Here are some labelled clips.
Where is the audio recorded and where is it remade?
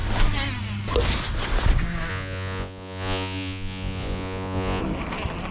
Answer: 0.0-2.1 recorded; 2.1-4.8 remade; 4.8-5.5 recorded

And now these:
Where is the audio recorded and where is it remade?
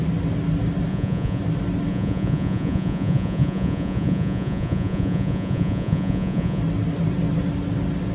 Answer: 0.0-0.9 recorded; 0.9-1.4 remade; 1.4-1.9 recorded; 1.9-6.6 remade; 6.6-8.1 recorded